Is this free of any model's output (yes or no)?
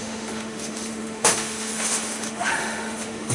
no